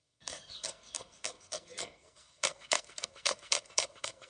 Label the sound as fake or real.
fake